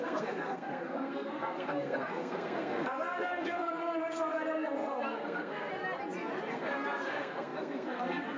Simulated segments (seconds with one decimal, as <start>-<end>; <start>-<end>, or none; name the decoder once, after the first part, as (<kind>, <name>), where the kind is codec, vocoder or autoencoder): 0.0-5.7 (codec, SNAC); 6.5-8.4